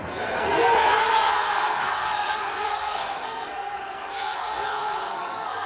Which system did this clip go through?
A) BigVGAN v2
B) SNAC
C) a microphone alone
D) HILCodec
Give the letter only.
B